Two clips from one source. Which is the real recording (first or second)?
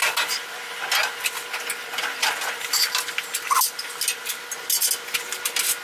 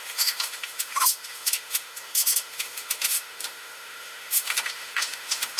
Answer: first